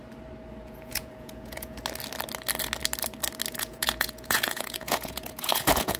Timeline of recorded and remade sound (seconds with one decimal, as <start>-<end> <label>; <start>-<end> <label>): 0.0-0.6 recorded; 0.6-1.8 remade; 1.8-3.5 recorded; 3.5-6.0 remade